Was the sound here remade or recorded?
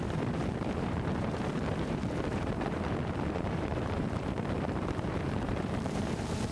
remade